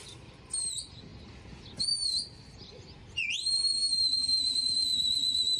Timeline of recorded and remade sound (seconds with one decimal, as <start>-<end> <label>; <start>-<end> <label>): 0.0-5.6 recorded